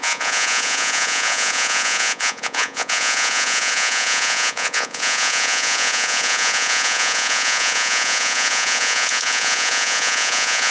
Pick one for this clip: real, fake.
fake